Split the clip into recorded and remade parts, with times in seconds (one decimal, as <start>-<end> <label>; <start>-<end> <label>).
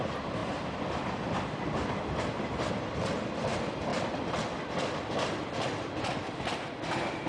0.0-0.4 remade; 0.4-0.9 recorded; 0.9-7.3 remade